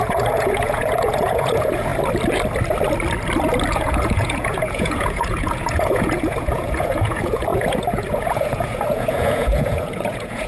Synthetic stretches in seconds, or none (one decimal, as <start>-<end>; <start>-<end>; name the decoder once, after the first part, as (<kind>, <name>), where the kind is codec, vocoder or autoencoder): 0.0-1.9 (vocoder, Vocos); 3.7-10.5